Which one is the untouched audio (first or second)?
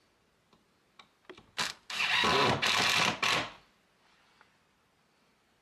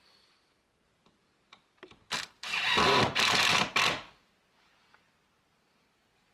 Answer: first